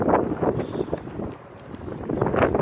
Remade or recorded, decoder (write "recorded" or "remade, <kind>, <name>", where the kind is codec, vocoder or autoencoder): recorded